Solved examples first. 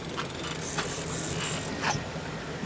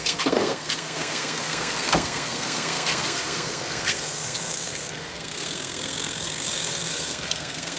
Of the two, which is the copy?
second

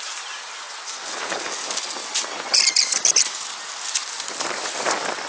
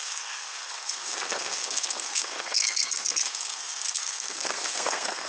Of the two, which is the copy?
second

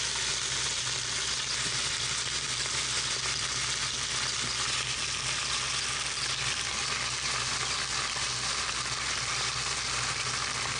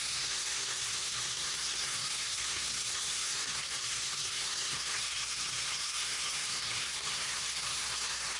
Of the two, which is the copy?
second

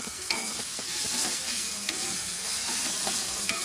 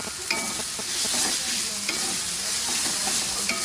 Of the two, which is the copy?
first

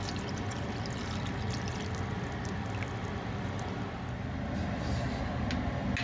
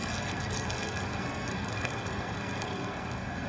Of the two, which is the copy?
second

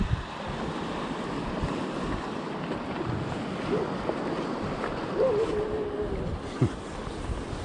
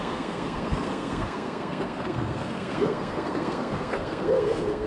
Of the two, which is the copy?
second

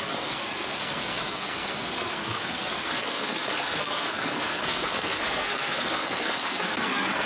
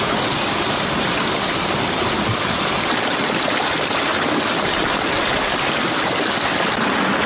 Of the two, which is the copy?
first